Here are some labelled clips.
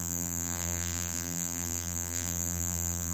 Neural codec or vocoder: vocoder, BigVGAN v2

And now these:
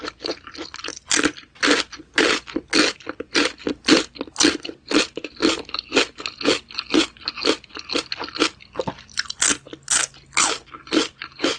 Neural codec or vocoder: none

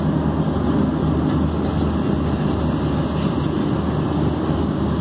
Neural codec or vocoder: none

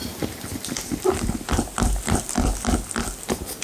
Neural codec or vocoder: none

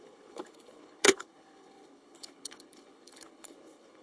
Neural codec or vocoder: codec, HILCodec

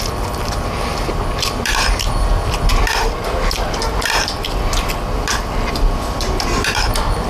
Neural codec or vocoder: vocoder, BigVGAN v2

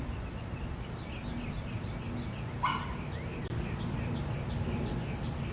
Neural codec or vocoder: none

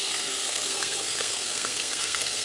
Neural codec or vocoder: codec, SNAC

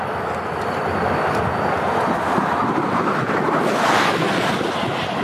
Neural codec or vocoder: none